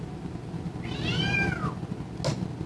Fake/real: real